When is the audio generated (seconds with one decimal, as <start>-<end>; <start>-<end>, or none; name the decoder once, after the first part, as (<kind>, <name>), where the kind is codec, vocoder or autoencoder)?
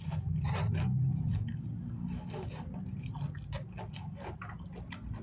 none